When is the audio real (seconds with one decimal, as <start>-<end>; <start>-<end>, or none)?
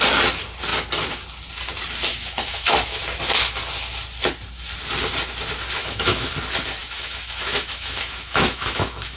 0.0-2.1; 3.0-5.8; 6.3-6.8